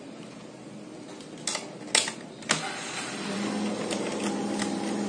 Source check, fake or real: real